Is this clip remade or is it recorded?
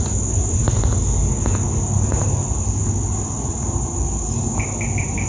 recorded